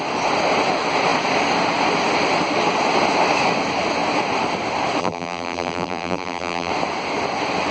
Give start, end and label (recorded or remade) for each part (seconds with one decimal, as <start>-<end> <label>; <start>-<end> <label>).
0.0-5.0 recorded; 5.0-6.7 remade; 6.7-7.7 recorded